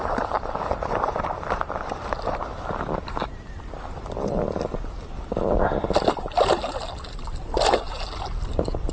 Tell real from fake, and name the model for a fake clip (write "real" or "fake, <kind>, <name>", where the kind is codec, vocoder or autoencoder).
real